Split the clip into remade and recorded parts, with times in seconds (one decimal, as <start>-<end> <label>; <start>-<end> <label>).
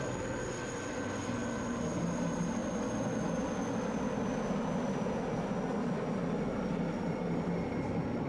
0.0-8.3 recorded